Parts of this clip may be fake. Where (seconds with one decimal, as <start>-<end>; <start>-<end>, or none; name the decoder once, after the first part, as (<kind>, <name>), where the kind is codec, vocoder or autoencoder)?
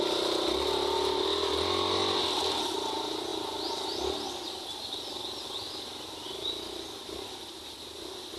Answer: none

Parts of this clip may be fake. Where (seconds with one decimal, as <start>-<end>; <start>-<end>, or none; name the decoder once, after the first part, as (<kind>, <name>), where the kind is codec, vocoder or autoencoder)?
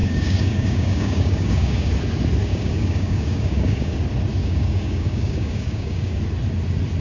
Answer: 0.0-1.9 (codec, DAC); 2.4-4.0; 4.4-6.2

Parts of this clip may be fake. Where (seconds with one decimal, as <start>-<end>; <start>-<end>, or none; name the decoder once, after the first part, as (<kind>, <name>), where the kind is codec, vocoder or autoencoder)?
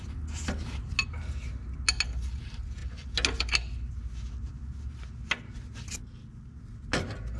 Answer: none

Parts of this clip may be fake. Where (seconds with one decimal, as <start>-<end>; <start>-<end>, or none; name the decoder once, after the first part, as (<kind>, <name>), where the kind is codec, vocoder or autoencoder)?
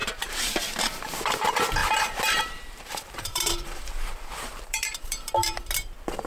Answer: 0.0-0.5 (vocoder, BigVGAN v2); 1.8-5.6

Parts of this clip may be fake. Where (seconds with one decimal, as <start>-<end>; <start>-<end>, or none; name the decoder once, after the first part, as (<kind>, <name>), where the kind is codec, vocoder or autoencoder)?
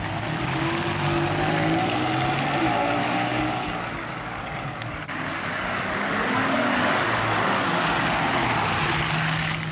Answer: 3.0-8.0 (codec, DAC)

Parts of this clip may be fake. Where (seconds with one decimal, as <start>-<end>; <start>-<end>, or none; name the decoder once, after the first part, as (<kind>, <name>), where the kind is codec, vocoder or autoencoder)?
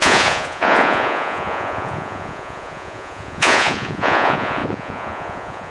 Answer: 0.0-5.7 (vocoder, Vocos)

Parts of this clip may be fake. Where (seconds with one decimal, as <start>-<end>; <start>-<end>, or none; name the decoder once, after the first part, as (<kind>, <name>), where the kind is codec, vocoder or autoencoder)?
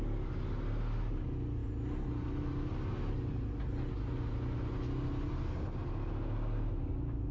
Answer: none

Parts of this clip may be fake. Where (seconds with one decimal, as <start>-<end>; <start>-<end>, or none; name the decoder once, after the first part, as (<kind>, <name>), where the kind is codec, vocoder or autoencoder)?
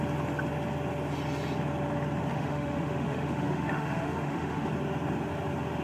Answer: 2.3-4.7 (autoencoder, DAC-VAE)